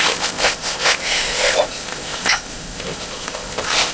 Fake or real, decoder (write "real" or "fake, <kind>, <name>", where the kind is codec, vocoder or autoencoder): fake, codec, ZipCodec